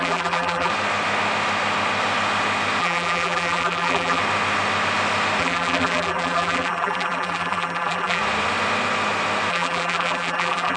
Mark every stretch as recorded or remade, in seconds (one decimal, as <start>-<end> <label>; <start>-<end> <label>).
0.0-0.7 remade; 0.7-2.8 recorded; 2.8-4.2 remade; 4.2-5.4 recorded; 5.4-8.2 remade; 8.2-9.5 recorded; 9.5-10.8 remade